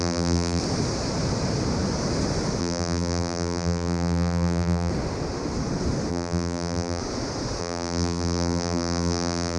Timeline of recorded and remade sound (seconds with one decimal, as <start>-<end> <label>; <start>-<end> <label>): 0.0-0.6 remade; 0.6-2.6 recorded; 2.6-4.9 remade; 4.9-6.1 recorded; 6.1-7.0 remade; 7.0-7.6 recorded; 7.6-9.6 remade